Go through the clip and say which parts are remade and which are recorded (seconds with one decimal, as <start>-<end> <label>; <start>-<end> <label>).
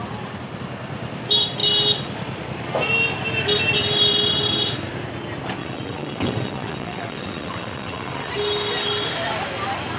0.0-5.6 recorded; 5.6-8.3 remade; 8.3-10.0 recorded